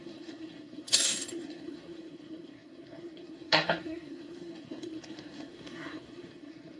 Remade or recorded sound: remade